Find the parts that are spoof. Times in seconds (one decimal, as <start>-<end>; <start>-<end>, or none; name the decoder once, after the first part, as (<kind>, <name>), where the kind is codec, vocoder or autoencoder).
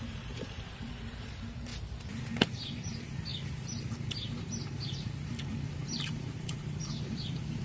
0.0-1.7 (vocoder, BigVGAN v2); 2.2-7.6